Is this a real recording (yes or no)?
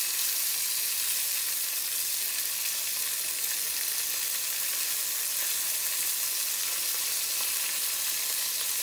yes